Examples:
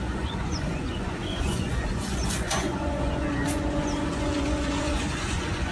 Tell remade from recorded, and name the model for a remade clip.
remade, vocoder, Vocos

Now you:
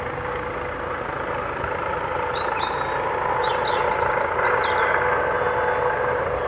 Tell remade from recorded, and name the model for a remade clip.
recorded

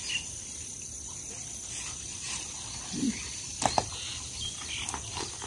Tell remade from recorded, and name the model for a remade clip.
recorded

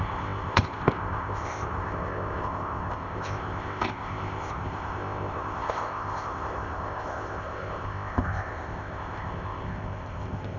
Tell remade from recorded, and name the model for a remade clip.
remade, codec, ZipCodec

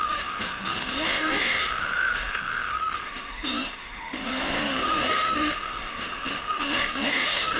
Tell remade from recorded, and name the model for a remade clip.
remade, autoencoder, DAC-VAE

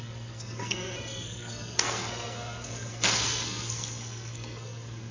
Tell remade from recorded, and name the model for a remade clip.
remade, codec, SNAC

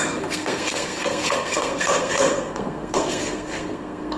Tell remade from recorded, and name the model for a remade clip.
remade, codec, SNAC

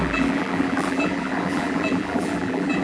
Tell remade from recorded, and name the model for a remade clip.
remade, vocoder, BigVGAN v2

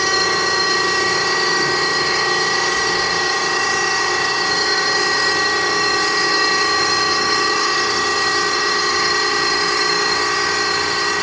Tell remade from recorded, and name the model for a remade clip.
remade, codec, DAC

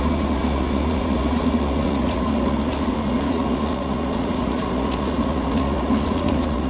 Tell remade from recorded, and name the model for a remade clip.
remade, vocoder, Vocos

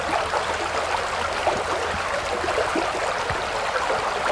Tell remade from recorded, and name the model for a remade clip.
recorded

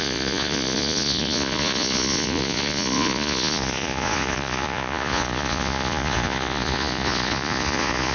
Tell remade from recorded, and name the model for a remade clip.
remade, vocoder, Vocos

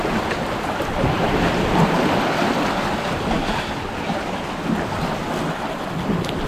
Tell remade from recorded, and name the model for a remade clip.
recorded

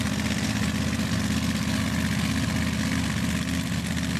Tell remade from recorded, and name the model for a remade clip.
recorded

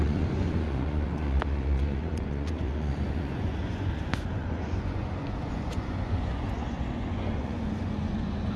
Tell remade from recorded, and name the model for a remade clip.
remade, vocoder, Vocos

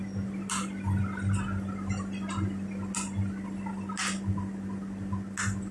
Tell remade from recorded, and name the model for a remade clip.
recorded